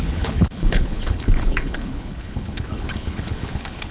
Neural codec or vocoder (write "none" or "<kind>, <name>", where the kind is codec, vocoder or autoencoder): codec, HILCodec